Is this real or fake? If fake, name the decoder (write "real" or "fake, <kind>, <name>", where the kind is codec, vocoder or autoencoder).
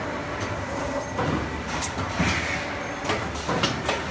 real